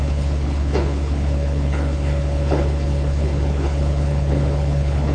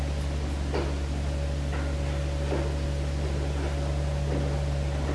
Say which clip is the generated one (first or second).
first